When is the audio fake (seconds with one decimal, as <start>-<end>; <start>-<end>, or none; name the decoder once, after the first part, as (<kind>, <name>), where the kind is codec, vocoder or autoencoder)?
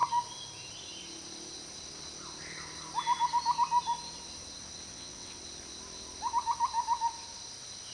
4.9-5.4 (vocoder, WaveNeXt)